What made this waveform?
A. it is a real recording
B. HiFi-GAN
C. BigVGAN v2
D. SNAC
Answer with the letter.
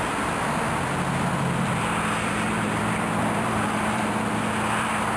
C